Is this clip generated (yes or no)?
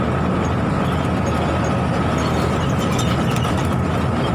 no